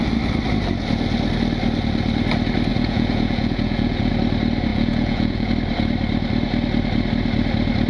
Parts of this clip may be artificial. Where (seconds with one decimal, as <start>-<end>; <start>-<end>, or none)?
2.7-4.1; 4.7-5.5